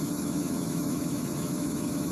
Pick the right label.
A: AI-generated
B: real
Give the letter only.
A